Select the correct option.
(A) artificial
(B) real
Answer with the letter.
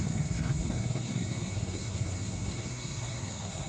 A